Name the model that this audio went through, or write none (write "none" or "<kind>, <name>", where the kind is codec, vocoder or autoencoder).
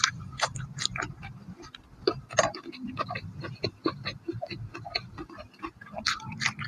none